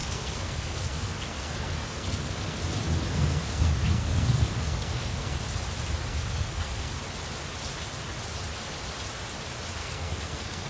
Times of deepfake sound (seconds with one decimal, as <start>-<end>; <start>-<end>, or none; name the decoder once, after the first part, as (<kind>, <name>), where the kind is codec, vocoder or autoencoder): 0.0-2.6 (codec, SNAC); 3.1-5.4; 6.1-7.0; 9.8-10.7